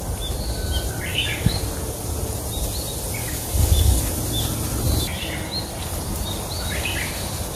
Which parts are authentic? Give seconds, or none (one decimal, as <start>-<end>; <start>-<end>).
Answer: 0.0-1.1; 1.6-3.2; 4.0-7.6